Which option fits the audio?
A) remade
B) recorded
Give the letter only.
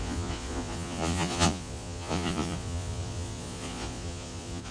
A